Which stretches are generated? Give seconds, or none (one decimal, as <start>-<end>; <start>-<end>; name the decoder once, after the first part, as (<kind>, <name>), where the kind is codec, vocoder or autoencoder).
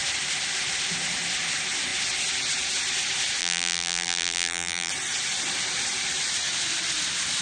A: 3.4-4.9 (vocoder, BigVGAN v2)